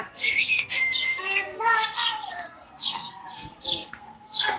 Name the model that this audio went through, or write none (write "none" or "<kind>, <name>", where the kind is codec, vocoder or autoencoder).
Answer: codec, SNAC